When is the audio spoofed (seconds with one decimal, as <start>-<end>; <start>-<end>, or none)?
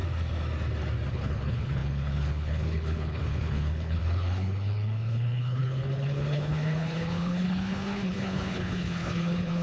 1.1-9.6